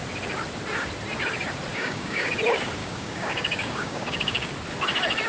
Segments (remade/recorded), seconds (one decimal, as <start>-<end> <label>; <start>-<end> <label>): 0.0-1.7 recorded; 1.7-2.3 remade; 2.3-2.8 recorded; 2.8-4.5 remade; 4.5-5.3 recorded